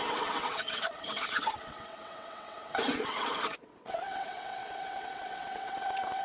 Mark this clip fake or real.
fake